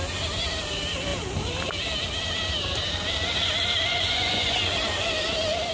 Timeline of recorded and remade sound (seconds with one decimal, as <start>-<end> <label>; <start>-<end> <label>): 0.0-3.9 recorded; 3.9-4.6 remade; 4.6-5.7 recorded